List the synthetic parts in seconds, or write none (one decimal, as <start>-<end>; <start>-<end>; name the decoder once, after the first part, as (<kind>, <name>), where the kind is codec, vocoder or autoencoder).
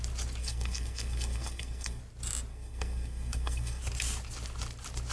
0.4-2.0 (codec, SNAC); 2.5-3.8